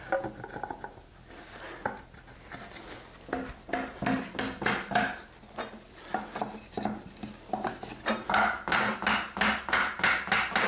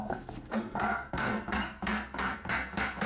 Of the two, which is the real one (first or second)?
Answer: first